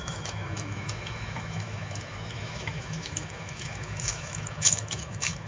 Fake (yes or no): yes